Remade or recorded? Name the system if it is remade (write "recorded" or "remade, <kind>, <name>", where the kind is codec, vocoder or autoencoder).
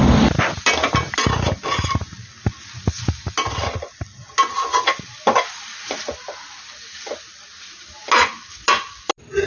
recorded